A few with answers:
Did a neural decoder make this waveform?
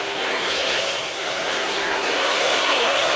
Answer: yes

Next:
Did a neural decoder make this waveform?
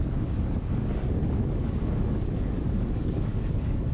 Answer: yes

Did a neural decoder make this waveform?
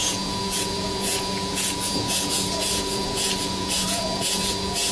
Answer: yes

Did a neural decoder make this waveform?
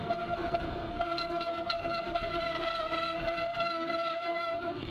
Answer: yes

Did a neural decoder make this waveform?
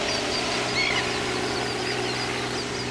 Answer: no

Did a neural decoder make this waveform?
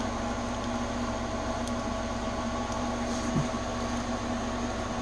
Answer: no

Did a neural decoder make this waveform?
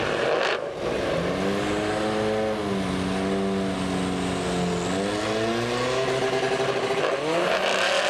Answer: no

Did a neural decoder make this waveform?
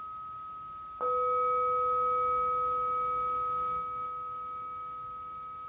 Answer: no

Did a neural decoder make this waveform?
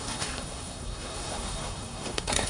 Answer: yes